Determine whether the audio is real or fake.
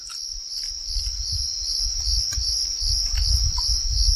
real